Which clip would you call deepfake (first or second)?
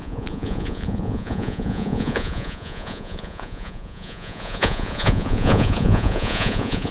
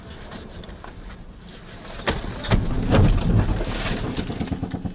first